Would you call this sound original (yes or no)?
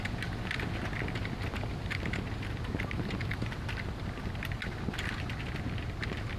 yes